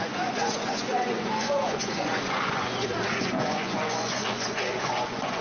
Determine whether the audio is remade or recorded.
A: remade